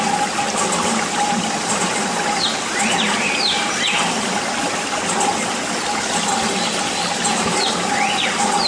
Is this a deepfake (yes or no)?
no